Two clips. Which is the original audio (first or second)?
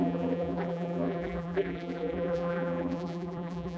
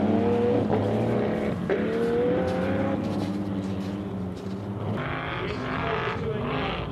second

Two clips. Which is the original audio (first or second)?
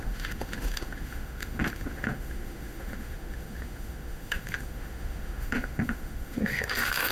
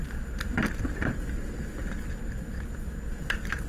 second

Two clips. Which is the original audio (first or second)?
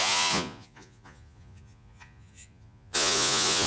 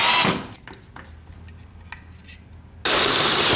second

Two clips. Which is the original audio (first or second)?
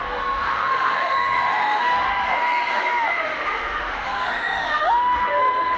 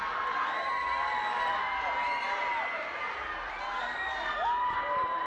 second